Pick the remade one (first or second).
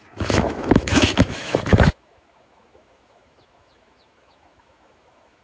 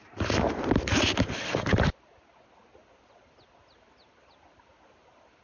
first